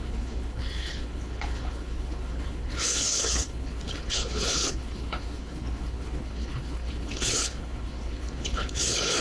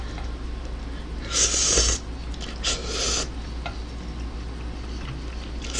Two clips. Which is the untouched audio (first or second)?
second